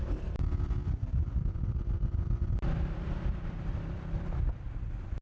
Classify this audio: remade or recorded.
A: remade